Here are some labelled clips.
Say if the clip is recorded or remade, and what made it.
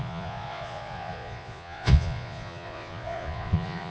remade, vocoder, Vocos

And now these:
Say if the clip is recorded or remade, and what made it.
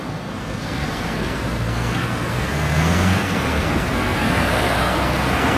remade, codec, SNAC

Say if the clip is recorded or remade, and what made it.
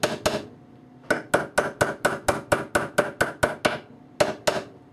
recorded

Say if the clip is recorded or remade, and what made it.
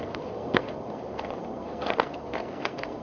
remade, codec, SNAC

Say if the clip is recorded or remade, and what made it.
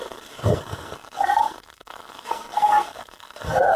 remade, codec, SNAC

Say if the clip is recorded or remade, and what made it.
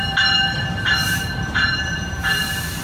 remade, vocoder, BigVGAN v2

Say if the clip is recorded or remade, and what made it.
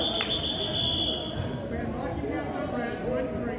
recorded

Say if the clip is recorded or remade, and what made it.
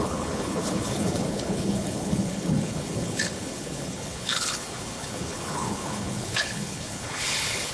remade, codec, HILCodec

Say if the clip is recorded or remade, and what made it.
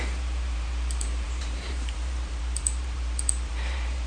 remade, vocoder, BigVGAN v2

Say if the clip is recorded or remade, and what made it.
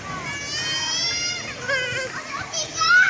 recorded